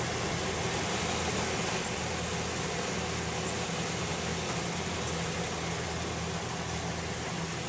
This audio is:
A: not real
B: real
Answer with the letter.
B